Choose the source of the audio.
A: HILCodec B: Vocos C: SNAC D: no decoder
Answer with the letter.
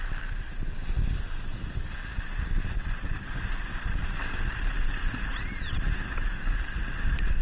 D